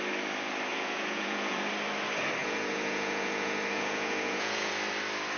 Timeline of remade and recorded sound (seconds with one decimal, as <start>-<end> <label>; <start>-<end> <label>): 0.0-0.7 recorded; 0.7-1.6 remade; 1.6-2.4 recorded; 2.4-4.7 remade; 4.7-5.4 recorded

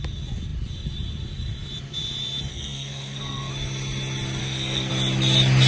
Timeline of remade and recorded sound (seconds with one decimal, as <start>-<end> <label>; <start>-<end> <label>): 0.0-2.5 recorded; 2.5-3.5 remade; 3.5-4.4 recorded; 4.4-4.9 remade; 4.9-5.7 recorded